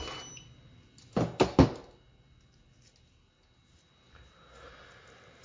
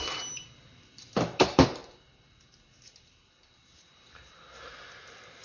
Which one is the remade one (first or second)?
second